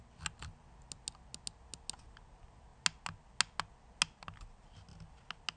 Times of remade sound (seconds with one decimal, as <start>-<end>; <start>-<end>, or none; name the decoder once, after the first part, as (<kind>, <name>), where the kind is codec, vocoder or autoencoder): none